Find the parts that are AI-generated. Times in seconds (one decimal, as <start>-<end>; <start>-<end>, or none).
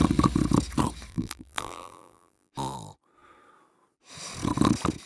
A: 1.1-2.5